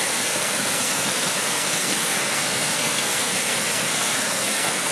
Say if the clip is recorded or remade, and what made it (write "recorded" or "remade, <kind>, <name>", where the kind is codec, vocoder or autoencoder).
remade, codec, SNAC